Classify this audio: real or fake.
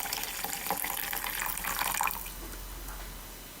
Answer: real